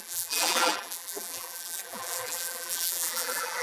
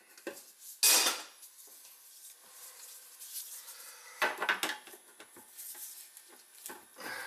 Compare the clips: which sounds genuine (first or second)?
second